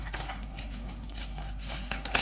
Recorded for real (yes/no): no